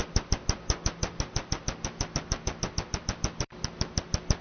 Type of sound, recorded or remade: recorded